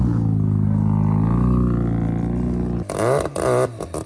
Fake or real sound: real